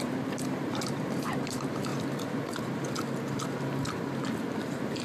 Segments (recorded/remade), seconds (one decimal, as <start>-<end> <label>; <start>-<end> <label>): 0.0-1.9 remade; 1.9-4.6 recorded; 4.6-5.0 remade